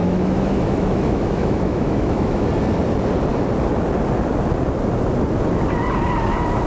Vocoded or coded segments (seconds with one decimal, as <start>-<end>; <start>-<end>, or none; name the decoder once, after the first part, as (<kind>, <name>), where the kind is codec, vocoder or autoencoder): 0.0-2.5 (autoencoder, DAC-VAE)